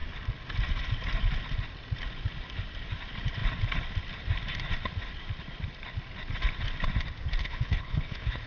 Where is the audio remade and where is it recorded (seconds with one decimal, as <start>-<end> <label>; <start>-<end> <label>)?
0.0-7.4 recorded; 7.4-8.5 remade